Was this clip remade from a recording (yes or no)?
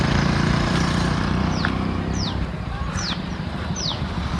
yes